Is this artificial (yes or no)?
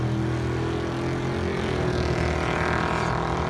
no